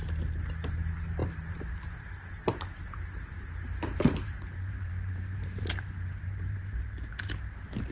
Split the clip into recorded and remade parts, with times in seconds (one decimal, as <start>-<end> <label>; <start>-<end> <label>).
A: 0.0-1.2 recorded; 1.2-1.8 remade; 1.8-2.4 recorded; 2.4-7.1 remade; 7.1-7.9 recorded